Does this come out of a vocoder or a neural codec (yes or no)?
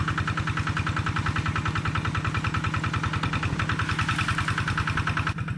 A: no